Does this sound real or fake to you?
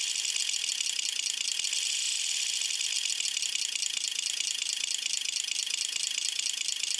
real